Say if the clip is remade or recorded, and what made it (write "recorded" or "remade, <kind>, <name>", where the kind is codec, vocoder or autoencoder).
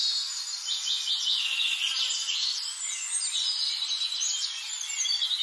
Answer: recorded